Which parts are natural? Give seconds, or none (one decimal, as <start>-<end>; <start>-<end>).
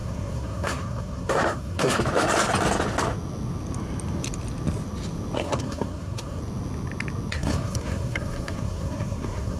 2.0-5.4; 6.4-7.3